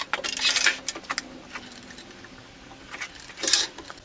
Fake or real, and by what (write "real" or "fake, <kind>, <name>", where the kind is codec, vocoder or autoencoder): real